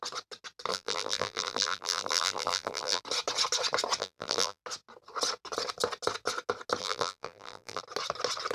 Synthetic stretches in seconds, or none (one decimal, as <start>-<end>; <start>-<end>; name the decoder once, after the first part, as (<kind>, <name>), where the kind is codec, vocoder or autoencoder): 0.7-3.0 (vocoder, BigVGAN v2); 4.0-4.6; 6.8-7.8